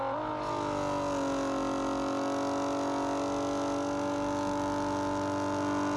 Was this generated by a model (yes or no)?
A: no